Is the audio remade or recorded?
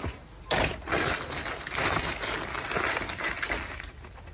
recorded